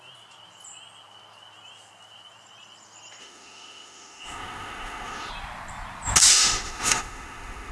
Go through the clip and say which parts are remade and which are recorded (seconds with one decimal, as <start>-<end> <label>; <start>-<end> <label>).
0.0-3.2 recorded; 3.2-5.3 remade; 5.3-6.3 recorded; 6.3-7.7 remade